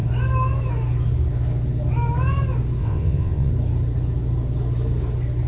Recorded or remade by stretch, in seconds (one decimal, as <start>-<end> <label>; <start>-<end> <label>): 0.0-2.8 recorded; 2.8-3.5 remade; 3.5-5.5 recorded